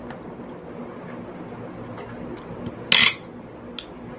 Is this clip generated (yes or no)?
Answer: no